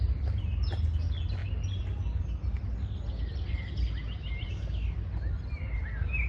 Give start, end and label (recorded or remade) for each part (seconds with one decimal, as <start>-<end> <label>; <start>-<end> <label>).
0.0-6.3 recorded